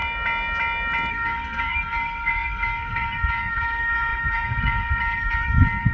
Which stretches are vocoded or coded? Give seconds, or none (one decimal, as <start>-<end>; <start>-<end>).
1.1-5.9